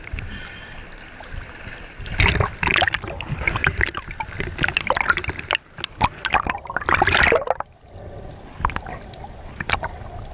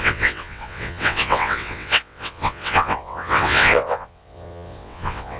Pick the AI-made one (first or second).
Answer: second